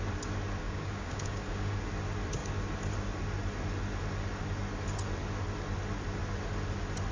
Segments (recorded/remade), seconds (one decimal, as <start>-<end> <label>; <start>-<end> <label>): 0.0-0.6 recorded; 0.6-1.8 remade; 1.8-7.1 recorded